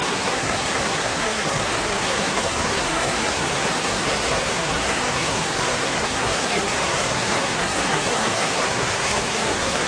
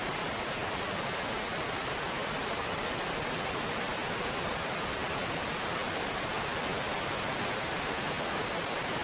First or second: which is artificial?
first